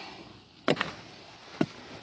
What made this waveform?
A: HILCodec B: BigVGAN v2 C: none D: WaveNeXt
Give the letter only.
C